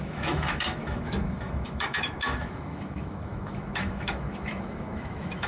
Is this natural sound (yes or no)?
no